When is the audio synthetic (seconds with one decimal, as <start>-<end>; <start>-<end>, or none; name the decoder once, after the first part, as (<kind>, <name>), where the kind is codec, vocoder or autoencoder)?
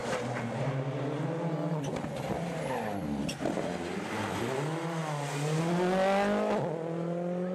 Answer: none